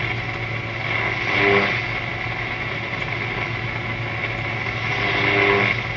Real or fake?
real